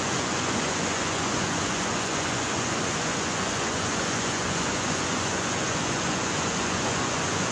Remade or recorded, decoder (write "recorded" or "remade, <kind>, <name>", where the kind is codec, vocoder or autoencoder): remade, vocoder, Vocos